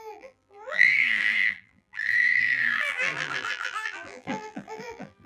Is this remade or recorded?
remade